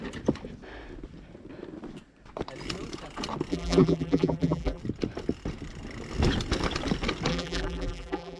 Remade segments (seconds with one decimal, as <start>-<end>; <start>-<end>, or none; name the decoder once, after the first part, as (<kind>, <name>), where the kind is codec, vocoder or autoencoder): 3.5-4.8 (vocoder, BigVGAN v2); 7.3-8.4